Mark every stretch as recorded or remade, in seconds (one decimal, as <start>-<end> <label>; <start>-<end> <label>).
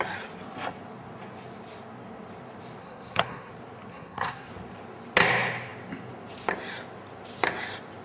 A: 0.0-2.8 recorded; 2.8-3.5 remade; 3.5-3.9 recorded; 3.9-4.5 remade; 4.5-8.0 recorded